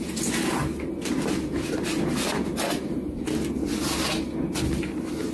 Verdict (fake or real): real